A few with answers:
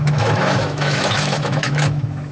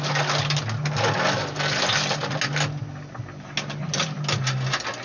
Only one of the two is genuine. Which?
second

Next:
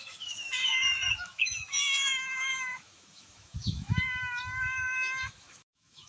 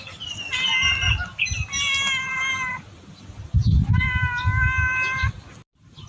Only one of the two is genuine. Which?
second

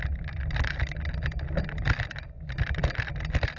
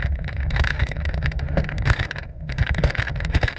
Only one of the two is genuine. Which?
first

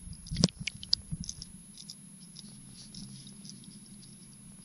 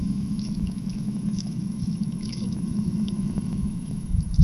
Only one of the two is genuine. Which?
first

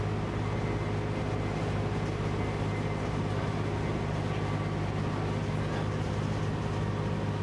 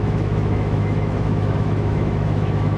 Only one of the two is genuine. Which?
first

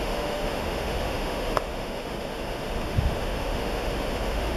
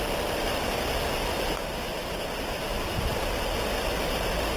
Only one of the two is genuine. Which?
second